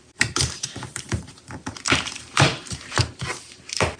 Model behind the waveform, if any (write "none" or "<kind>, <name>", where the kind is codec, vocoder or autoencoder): vocoder, BigVGAN v2